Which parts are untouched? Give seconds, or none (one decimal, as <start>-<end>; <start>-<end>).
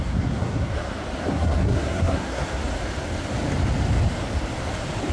0.7-1.3; 2.6-5.1